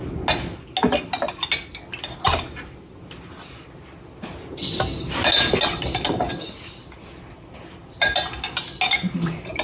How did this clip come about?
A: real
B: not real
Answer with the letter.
A